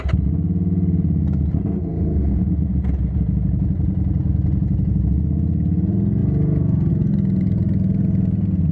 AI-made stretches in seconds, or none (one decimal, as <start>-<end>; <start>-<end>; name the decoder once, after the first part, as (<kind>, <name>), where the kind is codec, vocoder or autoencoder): none